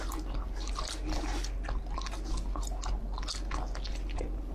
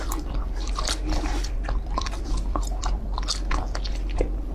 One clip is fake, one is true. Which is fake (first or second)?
second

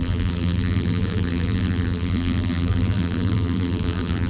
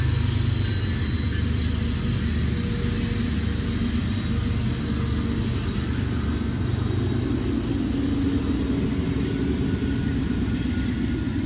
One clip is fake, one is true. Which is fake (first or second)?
first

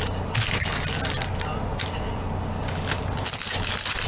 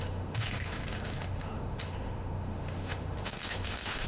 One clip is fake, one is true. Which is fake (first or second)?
second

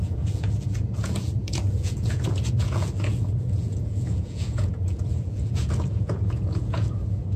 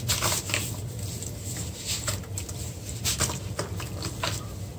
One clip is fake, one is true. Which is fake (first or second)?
first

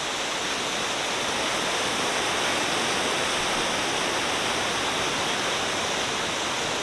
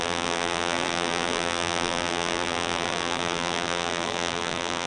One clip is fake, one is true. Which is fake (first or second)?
second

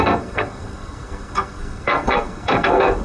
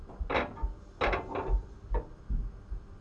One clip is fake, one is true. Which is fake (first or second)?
first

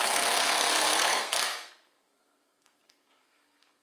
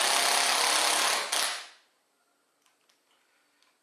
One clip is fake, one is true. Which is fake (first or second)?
first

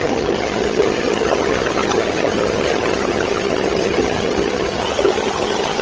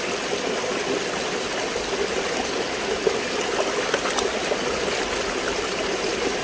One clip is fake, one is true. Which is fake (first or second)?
first